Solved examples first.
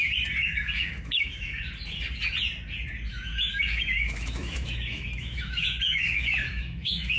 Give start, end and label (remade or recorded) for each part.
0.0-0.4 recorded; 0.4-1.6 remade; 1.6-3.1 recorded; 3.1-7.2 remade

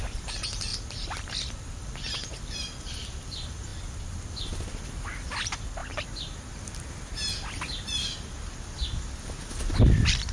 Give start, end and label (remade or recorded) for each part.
0.0-5.8 remade; 5.8-9.9 recorded; 9.9-10.3 remade

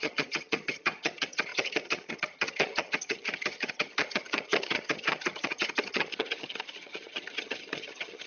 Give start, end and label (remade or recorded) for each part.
0.0-8.3 remade